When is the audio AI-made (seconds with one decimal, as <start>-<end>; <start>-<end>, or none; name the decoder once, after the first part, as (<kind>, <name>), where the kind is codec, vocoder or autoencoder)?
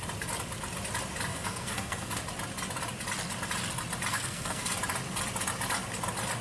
1.3-2.2 (codec, SNAC); 4.1-4.7